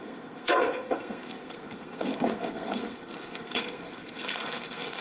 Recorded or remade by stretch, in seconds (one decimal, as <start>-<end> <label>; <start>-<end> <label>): 0.0-5.0 remade